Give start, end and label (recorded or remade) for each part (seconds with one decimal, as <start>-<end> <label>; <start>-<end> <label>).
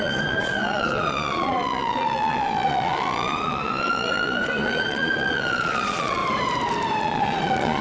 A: 0.0-6.2 remade; 6.2-7.0 recorded; 7.0-7.8 remade